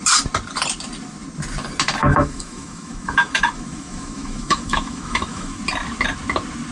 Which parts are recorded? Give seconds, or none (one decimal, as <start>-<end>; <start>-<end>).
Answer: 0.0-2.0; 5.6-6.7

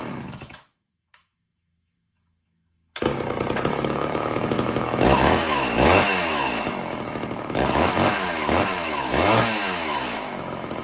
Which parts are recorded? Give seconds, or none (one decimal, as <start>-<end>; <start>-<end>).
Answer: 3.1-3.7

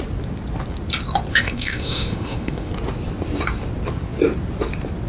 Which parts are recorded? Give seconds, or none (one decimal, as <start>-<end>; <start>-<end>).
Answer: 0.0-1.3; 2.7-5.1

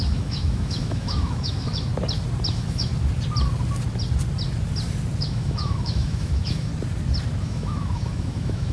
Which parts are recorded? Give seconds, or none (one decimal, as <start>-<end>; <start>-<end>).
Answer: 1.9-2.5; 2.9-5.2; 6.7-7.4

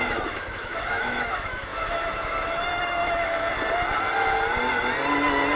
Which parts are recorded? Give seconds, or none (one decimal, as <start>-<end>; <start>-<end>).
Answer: 3.5-5.6

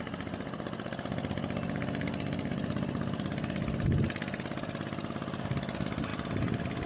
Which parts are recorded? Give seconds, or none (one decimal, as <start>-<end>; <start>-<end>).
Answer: 0.0-6.9

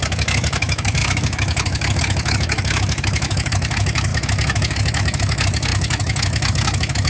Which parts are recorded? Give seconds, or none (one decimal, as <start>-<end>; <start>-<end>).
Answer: none